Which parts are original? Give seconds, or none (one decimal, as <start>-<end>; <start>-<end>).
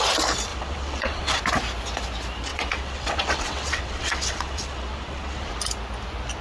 0.0-0.5; 1.4-2.5; 5.5-6.4